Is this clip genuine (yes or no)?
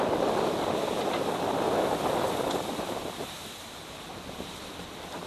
no